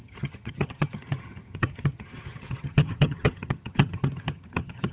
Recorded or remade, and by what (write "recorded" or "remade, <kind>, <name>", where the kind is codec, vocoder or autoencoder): remade, vocoder, HiFi-GAN